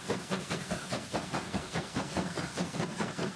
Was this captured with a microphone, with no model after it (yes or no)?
no